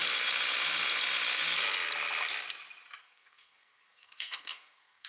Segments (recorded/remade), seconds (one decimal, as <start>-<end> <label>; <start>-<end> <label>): 0.0-3.0 recorded; 3.0-5.1 remade